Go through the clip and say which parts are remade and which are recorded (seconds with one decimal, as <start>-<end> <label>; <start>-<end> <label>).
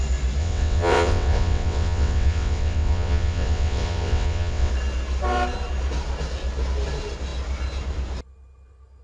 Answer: 0.0-0.4 recorded; 0.4-4.7 remade; 4.7-9.0 recorded